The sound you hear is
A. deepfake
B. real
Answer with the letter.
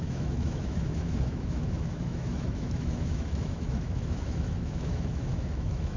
A